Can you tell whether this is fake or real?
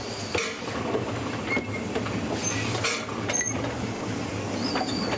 real